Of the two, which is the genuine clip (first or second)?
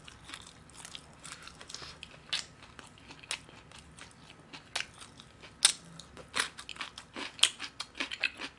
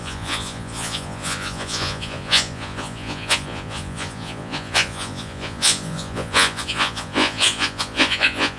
first